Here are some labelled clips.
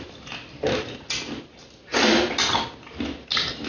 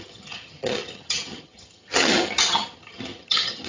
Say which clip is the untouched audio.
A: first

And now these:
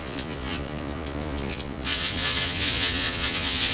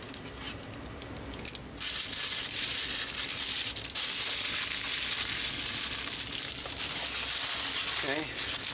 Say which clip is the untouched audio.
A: second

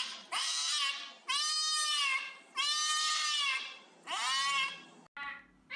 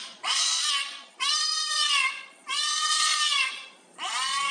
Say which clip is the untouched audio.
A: first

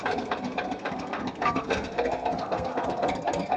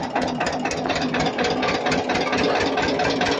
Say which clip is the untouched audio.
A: second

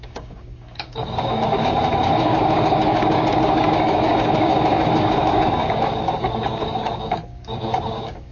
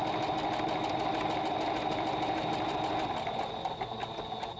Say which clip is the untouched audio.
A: second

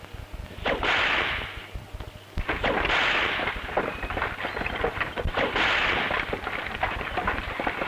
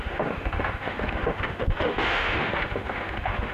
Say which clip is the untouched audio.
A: first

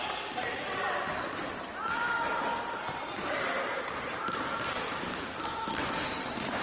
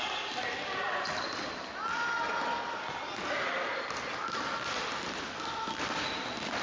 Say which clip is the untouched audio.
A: second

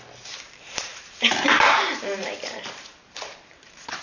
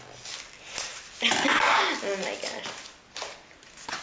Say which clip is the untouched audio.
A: second